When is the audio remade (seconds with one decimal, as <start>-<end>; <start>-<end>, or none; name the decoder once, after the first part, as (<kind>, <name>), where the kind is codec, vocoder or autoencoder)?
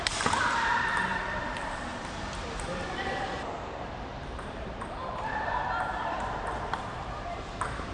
0.0-7.9 (vocoder, BigVGAN v2)